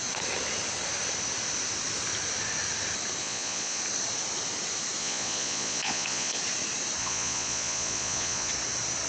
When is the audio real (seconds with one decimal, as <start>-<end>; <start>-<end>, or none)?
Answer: 0.0-3.2; 3.8-5.0; 6.4-7.0; 8.5-9.1